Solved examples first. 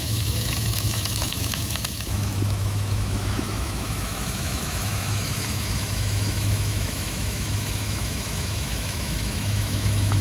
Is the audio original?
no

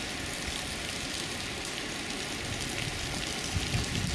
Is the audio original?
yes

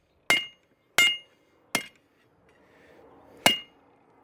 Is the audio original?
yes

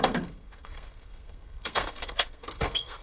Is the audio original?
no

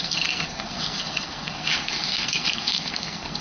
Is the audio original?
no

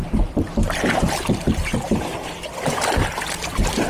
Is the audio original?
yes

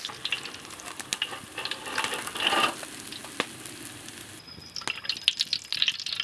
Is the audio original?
yes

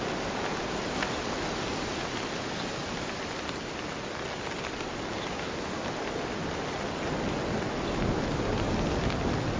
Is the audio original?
yes